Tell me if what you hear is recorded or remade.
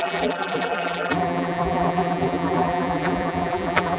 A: remade